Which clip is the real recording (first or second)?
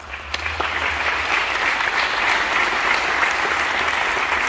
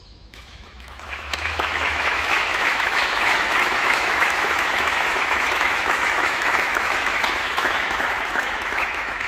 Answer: first